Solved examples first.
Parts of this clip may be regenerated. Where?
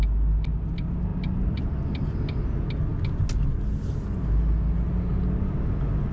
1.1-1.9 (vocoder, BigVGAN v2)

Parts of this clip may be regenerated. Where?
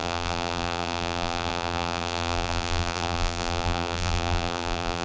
0.0-5.0 (vocoder, BigVGAN v2)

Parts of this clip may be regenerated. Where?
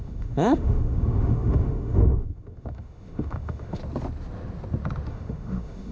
0.0-3.8 (autoencoder, DAC-VAE); 5.1-5.9